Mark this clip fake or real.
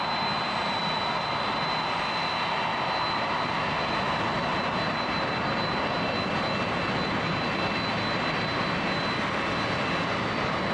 real